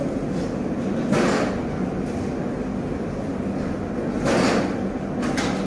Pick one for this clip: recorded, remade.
recorded